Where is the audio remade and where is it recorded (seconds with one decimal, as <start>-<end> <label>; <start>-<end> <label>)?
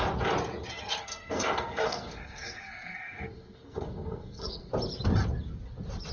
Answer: 0.0-1.0 recorded; 1.0-4.7 remade; 4.7-6.1 recorded